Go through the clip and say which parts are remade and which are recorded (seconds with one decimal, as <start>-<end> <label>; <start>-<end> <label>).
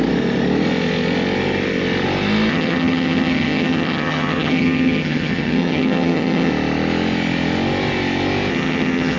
0.0-2.5 recorded; 2.5-6.5 remade; 6.5-8.5 recorded; 8.5-9.2 remade